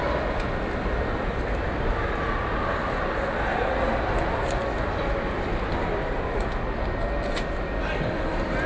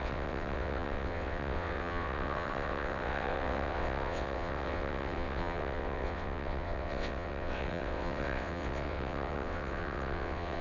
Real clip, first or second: first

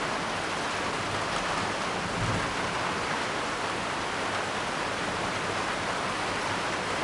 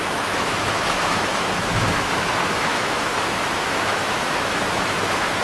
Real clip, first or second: first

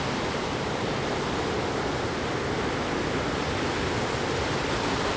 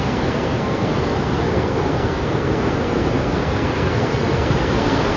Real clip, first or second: first